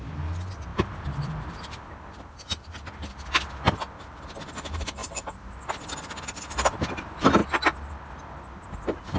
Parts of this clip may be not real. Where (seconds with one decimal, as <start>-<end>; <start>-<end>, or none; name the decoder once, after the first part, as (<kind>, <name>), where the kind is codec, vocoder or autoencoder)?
0.7-2.0 (vocoder, BigVGAN v2); 5.0-5.7